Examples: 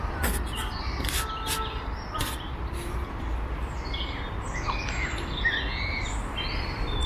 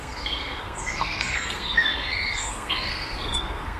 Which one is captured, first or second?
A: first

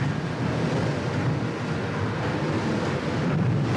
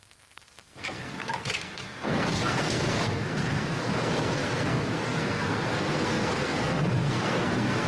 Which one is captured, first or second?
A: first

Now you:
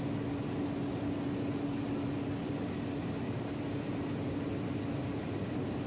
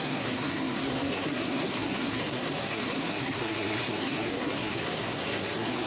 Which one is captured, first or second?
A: first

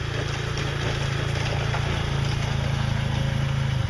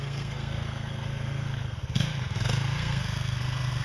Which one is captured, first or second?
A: first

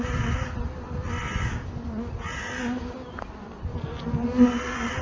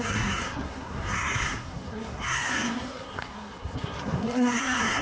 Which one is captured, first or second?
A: first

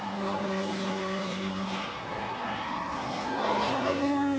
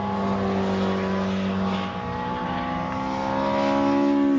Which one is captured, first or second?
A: second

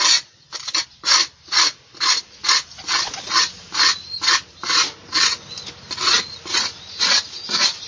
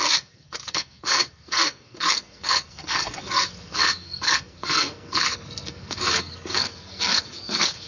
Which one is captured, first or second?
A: first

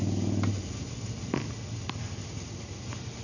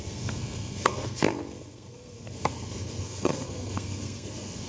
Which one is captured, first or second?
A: first